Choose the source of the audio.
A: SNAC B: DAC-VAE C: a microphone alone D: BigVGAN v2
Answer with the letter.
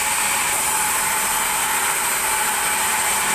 C